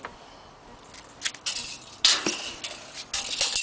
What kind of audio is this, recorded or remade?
recorded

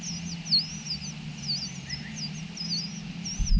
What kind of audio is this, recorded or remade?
recorded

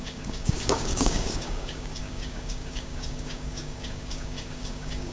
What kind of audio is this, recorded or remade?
remade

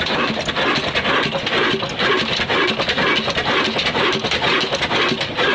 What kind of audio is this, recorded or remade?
recorded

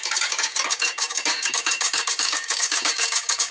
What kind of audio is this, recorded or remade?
remade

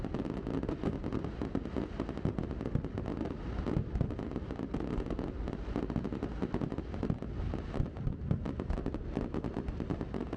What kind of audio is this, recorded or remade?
recorded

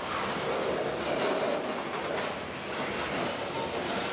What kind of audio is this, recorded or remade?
recorded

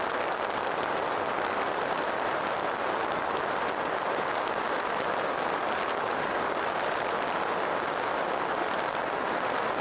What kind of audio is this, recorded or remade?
recorded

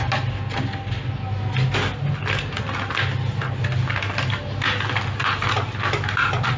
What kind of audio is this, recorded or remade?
recorded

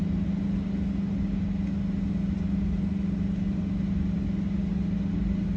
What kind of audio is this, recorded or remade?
recorded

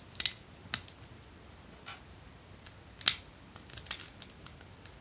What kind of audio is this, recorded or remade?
recorded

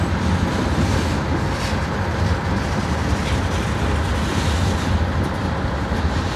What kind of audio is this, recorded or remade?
recorded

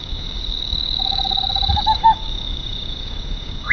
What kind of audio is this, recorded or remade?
remade